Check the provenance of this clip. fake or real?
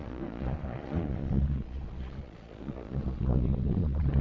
fake